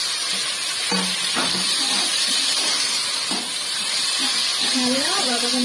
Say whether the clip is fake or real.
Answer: fake